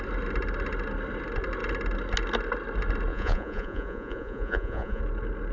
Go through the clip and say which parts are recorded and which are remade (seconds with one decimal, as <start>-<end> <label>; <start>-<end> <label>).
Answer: 0.0-3.1 recorded; 3.1-5.0 remade; 5.0-5.5 recorded